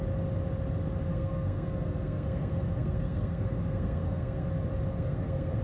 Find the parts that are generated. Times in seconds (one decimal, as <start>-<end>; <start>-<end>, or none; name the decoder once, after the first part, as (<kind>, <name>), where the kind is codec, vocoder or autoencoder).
1.1-4.5 (codec, SNAC); 4.9-5.6